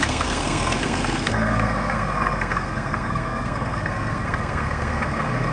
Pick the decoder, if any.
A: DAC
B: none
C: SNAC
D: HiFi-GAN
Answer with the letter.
C